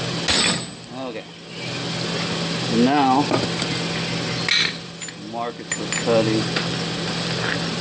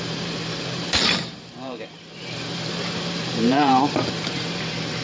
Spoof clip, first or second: second